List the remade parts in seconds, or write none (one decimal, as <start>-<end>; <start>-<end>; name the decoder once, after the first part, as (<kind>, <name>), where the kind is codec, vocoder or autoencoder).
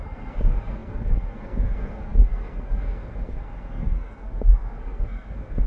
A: 0.0-5.7 (codec, SNAC)